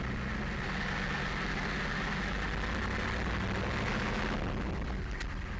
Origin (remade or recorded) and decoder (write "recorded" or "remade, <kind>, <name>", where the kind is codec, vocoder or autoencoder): recorded